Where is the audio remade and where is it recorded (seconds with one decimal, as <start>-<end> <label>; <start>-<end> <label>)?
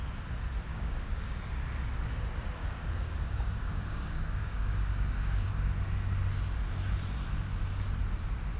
0.0-0.7 recorded; 0.7-1.5 remade; 1.5-2.6 recorded; 2.6-5.5 remade; 5.5-8.6 recorded